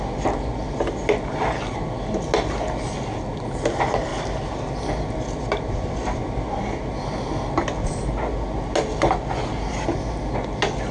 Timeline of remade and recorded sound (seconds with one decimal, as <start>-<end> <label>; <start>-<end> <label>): 0.0-10.9 recorded